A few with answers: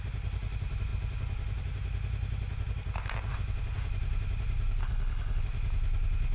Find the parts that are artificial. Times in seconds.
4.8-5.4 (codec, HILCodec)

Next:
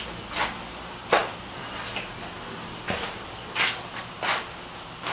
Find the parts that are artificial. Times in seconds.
none

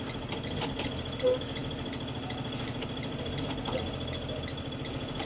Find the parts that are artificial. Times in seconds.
none

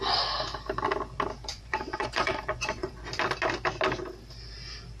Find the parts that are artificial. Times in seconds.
1.5-2.9 (vocoder, Vocos)